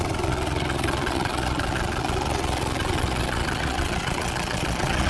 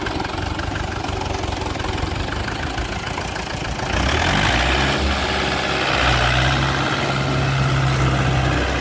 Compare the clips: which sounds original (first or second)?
second